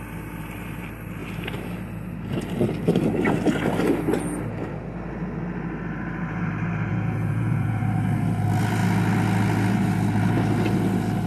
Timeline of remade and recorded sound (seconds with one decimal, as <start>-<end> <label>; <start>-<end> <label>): 0.0-6.9 recorded; 6.9-7.8 remade; 7.8-11.3 recorded